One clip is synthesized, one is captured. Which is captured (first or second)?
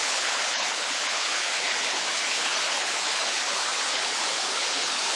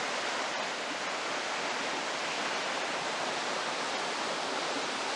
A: second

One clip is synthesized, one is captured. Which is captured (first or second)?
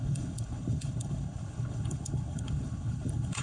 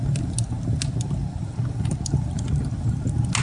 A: second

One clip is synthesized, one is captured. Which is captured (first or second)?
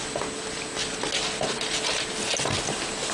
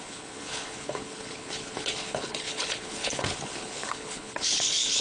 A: first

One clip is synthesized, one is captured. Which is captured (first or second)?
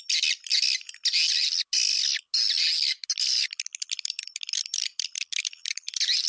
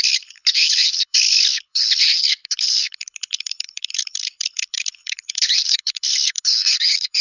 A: first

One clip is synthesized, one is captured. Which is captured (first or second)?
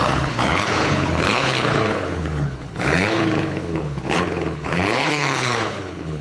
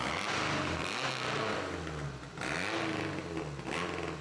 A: second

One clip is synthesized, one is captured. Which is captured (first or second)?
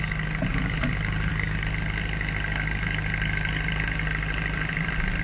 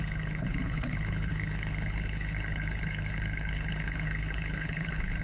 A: first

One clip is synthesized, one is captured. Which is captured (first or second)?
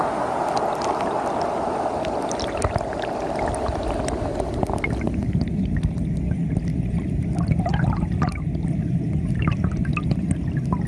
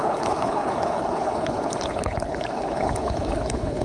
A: first